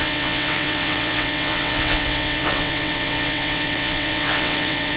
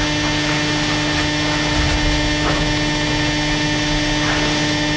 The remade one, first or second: first